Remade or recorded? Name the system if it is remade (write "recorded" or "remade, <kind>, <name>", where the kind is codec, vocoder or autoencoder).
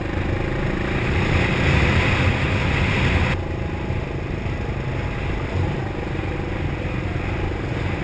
recorded